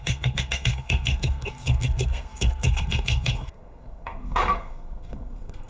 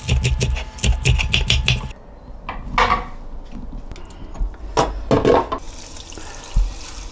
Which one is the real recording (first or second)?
second